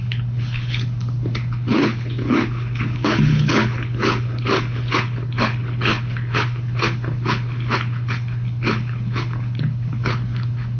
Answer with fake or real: fake